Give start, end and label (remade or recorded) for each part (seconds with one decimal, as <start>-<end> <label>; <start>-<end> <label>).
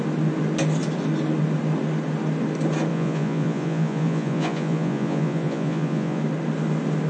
0.0-2.9 recorded; 2.9-6.2 remade; 6.2-7.1 recorded